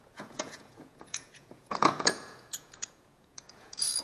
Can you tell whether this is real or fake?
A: fake